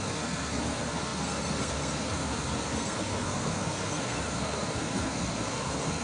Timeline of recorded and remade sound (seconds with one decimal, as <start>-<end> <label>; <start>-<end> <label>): 0.0-6.0 remade